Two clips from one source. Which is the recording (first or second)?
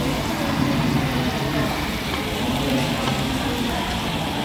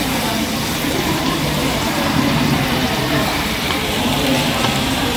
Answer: first